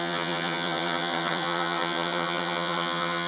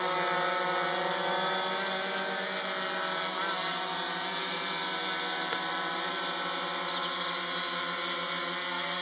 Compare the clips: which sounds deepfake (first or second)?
first